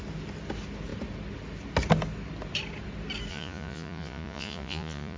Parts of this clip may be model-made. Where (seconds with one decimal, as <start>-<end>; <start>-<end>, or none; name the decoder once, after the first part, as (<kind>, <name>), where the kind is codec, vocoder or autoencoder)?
3.3-5.2 (vocoder, Vocos)